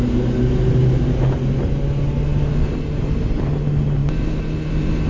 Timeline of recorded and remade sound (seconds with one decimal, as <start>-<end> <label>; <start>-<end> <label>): 0.0-5.1 recorded